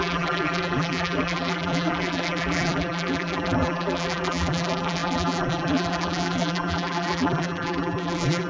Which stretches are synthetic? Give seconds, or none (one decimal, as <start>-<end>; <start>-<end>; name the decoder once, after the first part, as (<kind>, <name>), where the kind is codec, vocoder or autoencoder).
0.0-8.5 (vocoder, BigVGAN v2)